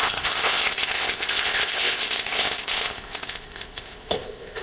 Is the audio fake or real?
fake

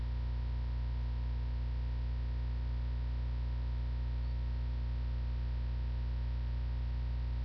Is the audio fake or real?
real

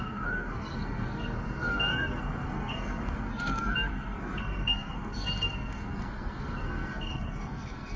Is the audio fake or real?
fake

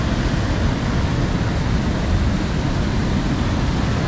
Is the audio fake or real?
real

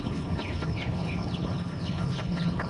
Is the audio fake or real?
fake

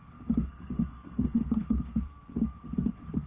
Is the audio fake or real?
fake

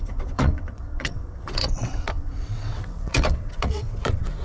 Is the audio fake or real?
fake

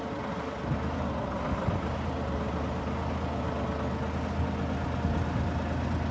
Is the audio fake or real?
real